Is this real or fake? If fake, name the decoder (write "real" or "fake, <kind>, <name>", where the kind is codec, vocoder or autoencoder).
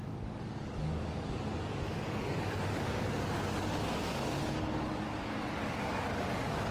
fake, codec, DAC